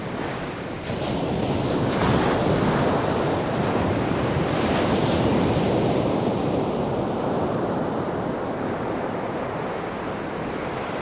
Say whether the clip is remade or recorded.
recorded